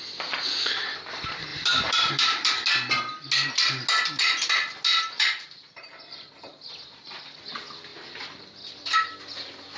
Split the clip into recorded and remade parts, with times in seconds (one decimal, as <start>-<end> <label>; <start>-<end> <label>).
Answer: 0.0-1.5 recorded; 1.5-2.5 remade; 2.5-4.9 recorded; 4.9-5.9 remade; 5.9-7.9 recorded; 7.9-9.1 remade; 9.1-9.8 recorded